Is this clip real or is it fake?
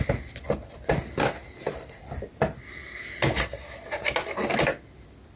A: real